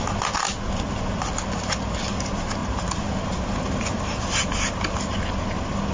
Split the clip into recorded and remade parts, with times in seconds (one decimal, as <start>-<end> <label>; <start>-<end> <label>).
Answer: 0.0-2.6 recorded; 2.6-5.2 remade; 5.2-5.9 recorded